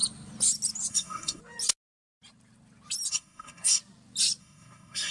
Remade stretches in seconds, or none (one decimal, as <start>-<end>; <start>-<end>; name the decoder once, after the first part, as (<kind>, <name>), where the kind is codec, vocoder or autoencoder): 0.9-1.4 (codec, SNAC); 3.1-3.8; 4.4-5.1

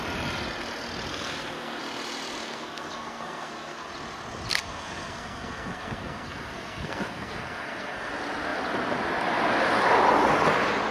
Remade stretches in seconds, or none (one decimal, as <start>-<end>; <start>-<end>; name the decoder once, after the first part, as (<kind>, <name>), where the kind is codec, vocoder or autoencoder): 1.1-1.8 (codec, SNAC); 2.4-3.9; 4.5-8.1

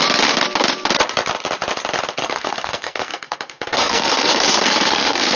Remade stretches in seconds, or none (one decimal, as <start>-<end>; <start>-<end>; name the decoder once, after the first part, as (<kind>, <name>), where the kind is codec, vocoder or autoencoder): 2.2-5.4 (codec, SNAC)

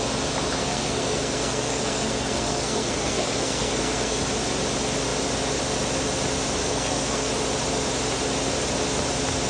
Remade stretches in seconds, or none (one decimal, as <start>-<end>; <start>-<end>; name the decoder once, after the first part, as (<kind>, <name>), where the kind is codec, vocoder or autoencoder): 0.6-4.2 (codec, SNAC); 6.6-7.3

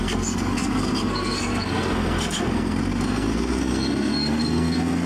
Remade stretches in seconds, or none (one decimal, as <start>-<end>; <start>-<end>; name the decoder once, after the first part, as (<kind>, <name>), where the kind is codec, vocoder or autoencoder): 0.0-5.1 (codec, SNAC)

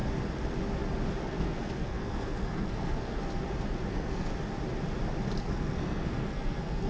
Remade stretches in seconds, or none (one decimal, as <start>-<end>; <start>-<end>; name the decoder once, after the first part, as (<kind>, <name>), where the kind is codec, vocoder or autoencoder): 1.2-3.2 (codec, SNAC); 3.9-4.3; 5.4-6.9